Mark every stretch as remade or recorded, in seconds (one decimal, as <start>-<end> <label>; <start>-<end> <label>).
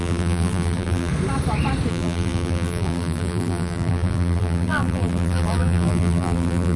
0.0-1.1 remade; 1.1-1.9 recorded; 1.9-6.8 remade